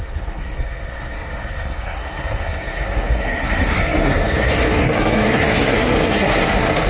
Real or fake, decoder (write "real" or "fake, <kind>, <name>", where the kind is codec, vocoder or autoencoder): fake, codec, SNAC